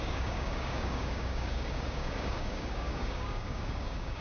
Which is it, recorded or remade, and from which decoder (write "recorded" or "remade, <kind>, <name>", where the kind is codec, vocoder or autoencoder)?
remade, codec, DAC